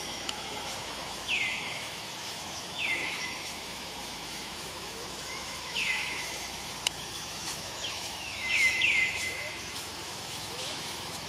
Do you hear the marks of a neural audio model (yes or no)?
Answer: yes